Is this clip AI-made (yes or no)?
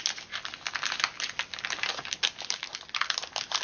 no